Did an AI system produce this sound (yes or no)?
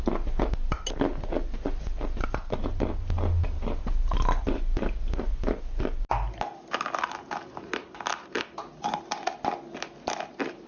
no